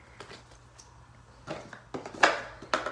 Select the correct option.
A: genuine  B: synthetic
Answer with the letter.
A